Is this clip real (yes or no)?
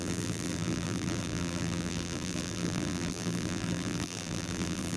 no